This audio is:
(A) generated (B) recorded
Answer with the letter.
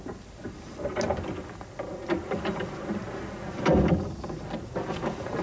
B